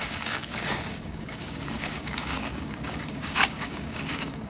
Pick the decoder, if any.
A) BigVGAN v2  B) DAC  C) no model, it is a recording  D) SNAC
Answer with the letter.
B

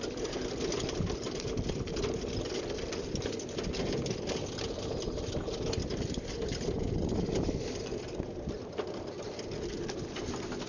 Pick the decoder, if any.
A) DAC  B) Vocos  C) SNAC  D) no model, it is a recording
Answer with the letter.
D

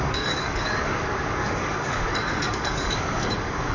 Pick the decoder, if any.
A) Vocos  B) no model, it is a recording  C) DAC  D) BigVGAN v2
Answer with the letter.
C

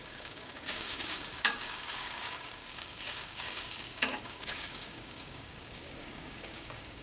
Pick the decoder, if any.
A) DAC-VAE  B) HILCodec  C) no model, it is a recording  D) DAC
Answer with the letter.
D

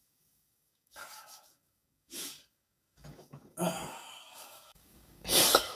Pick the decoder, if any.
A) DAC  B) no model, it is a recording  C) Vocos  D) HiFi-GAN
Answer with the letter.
A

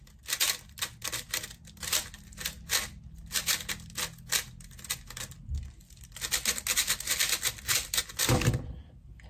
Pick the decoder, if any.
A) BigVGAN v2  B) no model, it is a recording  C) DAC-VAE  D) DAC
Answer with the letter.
B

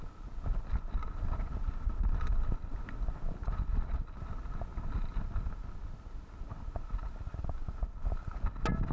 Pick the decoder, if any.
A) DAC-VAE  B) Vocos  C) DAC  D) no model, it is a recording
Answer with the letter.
D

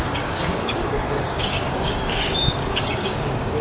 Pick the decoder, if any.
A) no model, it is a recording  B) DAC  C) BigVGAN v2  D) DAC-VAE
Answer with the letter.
B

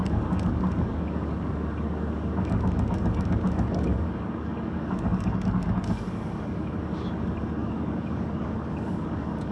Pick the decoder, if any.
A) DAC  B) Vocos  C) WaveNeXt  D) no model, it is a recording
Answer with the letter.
A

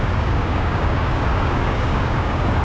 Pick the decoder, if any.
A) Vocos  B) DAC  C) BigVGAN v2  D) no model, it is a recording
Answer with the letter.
B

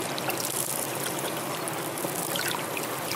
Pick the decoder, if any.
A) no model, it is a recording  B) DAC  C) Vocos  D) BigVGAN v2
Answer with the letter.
A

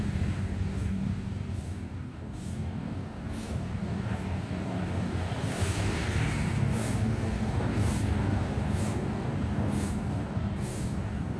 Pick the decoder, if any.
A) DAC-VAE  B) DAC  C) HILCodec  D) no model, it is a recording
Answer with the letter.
B